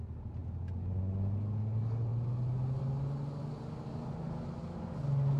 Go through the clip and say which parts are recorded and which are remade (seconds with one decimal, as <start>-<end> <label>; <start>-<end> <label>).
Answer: 0.0-5.4 recorded